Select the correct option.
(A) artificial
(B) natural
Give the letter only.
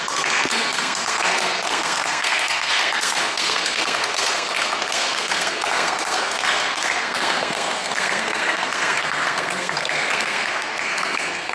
A